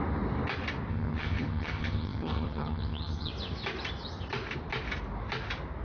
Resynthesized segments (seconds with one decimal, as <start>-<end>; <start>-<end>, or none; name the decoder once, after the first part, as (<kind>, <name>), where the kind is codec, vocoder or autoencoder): 0.9-3.3 (vocoder, HiFi-GAN)